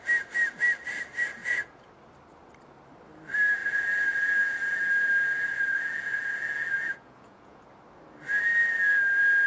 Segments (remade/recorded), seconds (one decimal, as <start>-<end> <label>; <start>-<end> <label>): 0.0-1.4 recorded; 1.4-1.9 remade; 1.9-5.5 recorded; 5.5-7.6 remade; 7.6-9.5 recorded